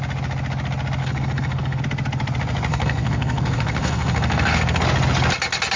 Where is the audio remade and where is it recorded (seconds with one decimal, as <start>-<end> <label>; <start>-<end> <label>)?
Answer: 0.0-1.0 recorded; 1.0-1.8 remade; 1.8-2.7 recorded; 2.7-4.8 remade; 4.8-5.8 recorded